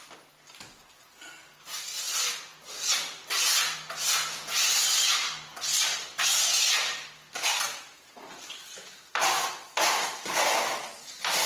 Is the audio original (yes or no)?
yes